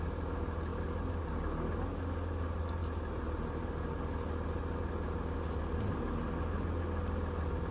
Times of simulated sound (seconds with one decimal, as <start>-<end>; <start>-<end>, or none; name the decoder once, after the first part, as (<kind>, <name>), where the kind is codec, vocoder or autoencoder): none